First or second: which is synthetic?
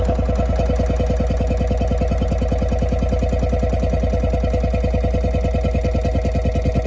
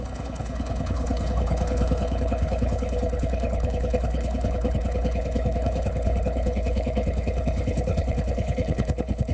second